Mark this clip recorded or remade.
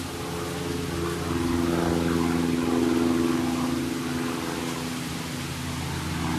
recorded